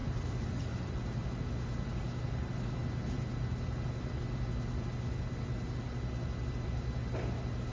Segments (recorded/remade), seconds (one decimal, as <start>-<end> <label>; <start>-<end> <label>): 0.0-7.7 recorded